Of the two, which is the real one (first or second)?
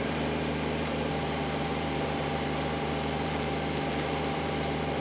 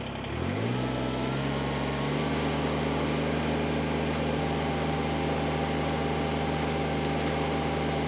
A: second